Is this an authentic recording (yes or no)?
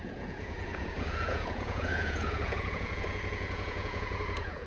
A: no